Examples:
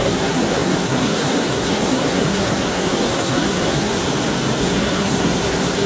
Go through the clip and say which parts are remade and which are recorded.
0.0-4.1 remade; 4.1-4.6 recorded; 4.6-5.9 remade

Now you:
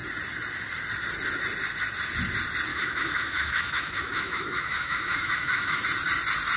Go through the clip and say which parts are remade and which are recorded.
0.0-2.7 recorded; 2.7-5.8 remade; 5.8-6.6 recorded

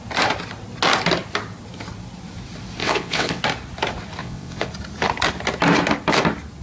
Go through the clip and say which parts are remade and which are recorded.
0.0-2.8 recorded; 2.8-3.4 remade; 3.4-4.2 recorded; 4.2-4.7 remade; 4.7-6.6 recorded

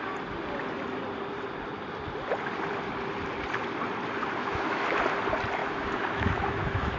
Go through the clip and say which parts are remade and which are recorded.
0.0-4.4 recorded; 4.4-5.0 remade; 5.0-5.6 recorded; 5.6-7.0 remade

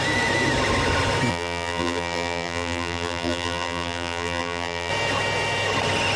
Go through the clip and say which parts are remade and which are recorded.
0.0-1.3 recorded; 1.3-4.9 remade; 4.9-6.2 recorded

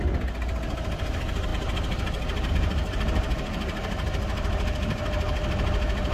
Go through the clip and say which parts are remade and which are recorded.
0.0-6.1 recorded

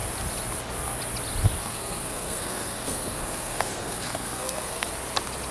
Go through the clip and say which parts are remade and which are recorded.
0.0-1.6 recorded; 1.6-4.9 remade; 4.9-5.5 recorded

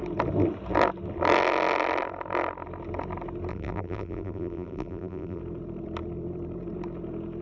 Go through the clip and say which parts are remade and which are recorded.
0.0-3.5 recorded; 3.5-5.4 remade; 5.4-7.4 recorded